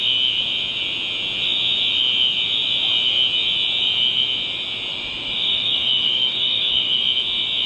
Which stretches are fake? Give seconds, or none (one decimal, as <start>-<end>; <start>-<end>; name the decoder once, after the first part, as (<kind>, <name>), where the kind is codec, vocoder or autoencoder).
4.9-7.0 (autoencoder, DAC-VAE)